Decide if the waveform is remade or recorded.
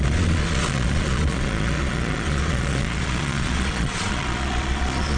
remade